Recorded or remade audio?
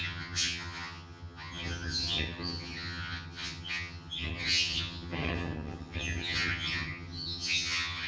remade